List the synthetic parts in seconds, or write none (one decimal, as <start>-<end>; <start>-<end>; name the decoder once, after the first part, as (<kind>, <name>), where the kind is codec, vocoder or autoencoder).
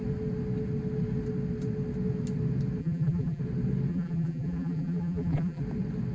2.8-3.4 (vocoder, BigVGAN v2); 3.9-5.6